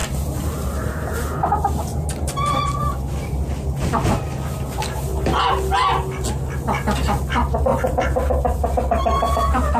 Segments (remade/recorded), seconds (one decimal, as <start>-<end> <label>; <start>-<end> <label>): 0.0-1.5 remade; 1.5-7.7 recorded; 7.7-9.8 remade